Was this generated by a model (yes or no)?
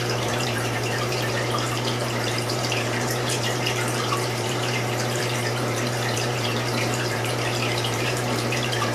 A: yes